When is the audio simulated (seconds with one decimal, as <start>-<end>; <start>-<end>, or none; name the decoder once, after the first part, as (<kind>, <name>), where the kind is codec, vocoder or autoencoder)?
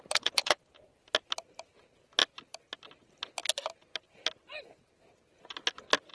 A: 0.9-1.7 (vocoder, BigVGAN v2)